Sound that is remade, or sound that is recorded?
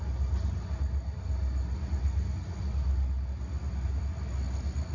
recorded